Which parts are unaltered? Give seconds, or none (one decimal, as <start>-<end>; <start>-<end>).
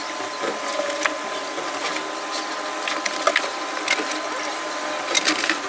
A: 0.0-5.7